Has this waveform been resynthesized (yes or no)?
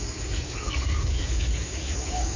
yes